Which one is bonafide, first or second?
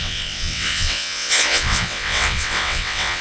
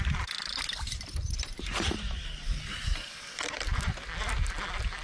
second